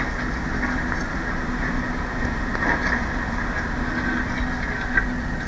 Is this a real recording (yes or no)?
yes